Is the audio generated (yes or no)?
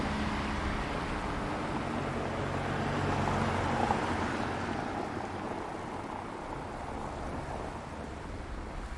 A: no